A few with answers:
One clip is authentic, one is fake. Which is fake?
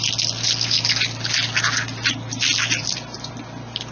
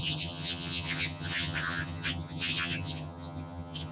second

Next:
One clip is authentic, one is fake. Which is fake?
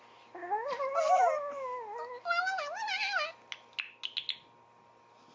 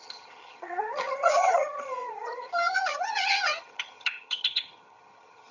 second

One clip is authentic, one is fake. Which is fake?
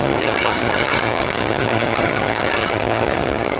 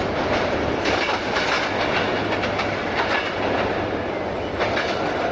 first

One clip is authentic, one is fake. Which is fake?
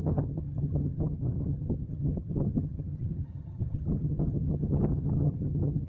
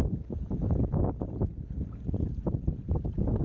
first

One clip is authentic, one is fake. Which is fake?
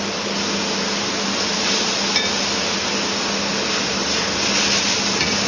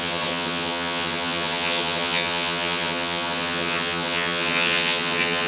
second